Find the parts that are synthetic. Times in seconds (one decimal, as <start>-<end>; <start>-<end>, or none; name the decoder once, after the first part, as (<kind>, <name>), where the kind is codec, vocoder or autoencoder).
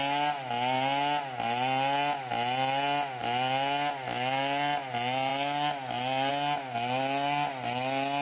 none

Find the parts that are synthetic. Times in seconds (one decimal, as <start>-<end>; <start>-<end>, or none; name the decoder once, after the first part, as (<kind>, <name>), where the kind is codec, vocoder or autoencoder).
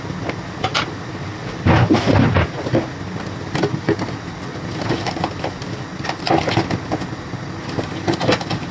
1.3-5.3 (vocoder, BigVGAN v2)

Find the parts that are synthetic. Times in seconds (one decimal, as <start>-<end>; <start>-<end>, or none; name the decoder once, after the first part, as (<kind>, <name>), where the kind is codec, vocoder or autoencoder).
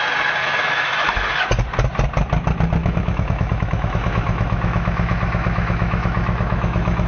0.4-0.9 (autoencoder, DAC-VAE); 2.8-7.1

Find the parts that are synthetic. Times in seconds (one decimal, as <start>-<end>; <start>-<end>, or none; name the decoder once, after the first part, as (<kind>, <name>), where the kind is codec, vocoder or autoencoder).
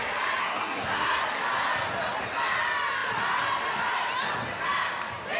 0.4-1.2 (codec, SNAC)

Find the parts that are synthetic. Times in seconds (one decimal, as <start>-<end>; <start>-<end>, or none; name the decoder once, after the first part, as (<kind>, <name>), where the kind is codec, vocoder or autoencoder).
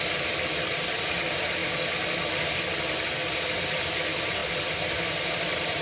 none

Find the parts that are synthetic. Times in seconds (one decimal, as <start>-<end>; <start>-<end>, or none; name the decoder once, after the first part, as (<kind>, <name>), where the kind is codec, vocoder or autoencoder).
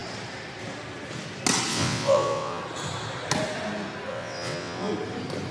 1.7-2.6 (vocoder, WaveNeXt); 4.1-4.9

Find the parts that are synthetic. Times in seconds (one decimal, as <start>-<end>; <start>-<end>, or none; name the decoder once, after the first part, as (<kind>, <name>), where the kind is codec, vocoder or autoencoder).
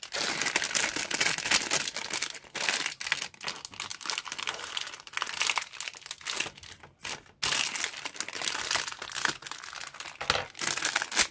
none